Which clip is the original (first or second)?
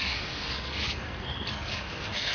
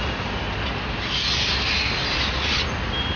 second